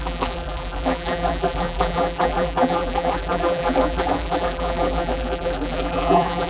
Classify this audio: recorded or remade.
remade